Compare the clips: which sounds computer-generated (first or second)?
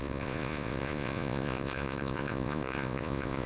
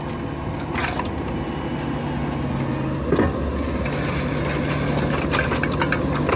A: first